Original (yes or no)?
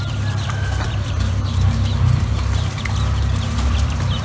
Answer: no